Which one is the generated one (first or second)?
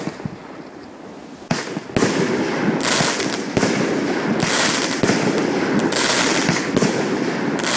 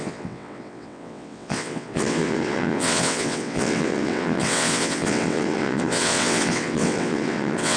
second